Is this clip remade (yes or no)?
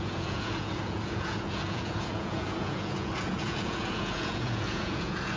yes